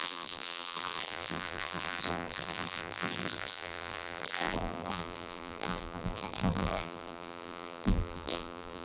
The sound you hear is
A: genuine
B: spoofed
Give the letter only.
B